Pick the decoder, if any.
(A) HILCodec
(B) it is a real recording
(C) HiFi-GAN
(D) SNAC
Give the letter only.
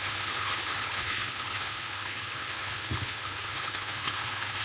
A